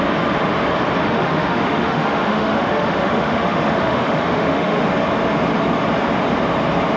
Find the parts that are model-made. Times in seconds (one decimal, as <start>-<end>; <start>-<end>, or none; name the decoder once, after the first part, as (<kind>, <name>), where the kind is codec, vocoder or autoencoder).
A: 1.0-4.9 (autoencoder, DAC-VAE)